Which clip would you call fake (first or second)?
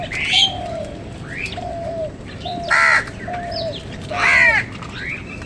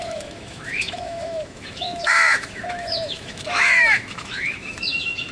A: second